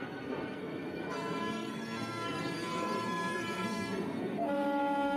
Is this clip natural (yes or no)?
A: no